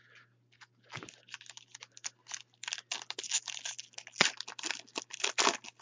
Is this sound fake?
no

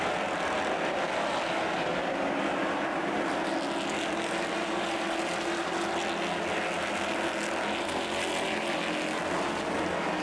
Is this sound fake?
no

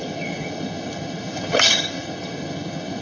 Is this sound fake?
yes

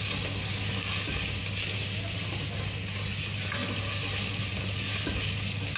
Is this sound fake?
no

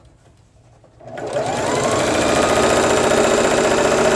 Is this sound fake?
no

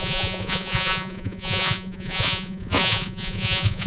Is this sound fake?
yes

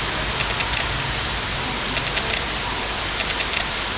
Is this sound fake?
no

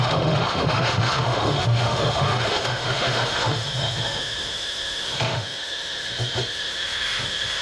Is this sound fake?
yes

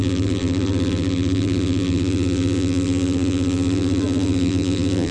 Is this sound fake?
yes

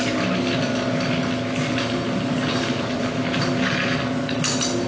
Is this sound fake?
no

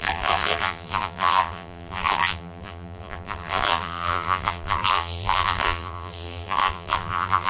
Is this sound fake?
yes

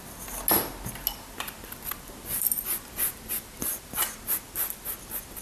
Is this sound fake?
no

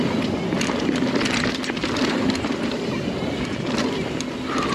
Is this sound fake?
no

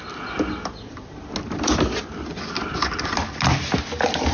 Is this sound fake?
no